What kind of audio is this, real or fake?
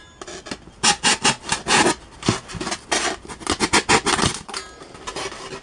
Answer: real